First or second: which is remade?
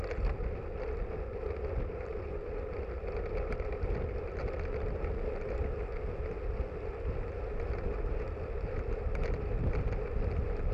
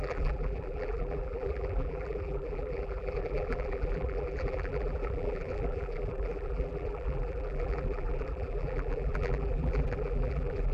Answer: second